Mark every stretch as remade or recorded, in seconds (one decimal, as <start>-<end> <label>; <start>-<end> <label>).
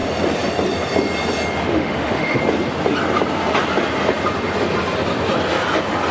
0.0-1.7 recorded; 1.7-2.4 remade; 2.4-6.1 recorded